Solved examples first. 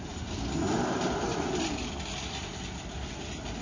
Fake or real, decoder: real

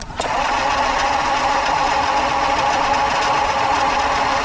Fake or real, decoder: fake, vocoder, Vocos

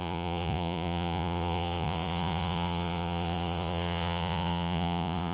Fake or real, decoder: fake, vocoder, Vocos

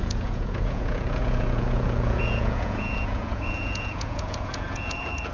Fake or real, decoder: fake, vocoder, Vocos